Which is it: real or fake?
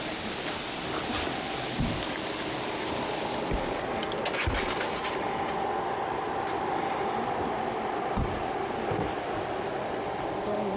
real